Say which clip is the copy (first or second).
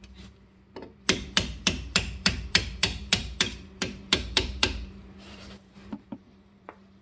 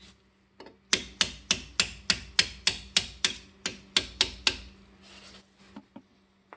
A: first